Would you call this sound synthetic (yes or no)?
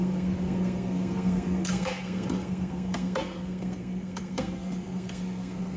yes